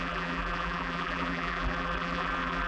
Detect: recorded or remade remade